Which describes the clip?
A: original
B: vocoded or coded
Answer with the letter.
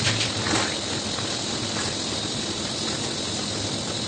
A